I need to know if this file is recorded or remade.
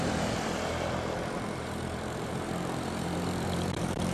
remade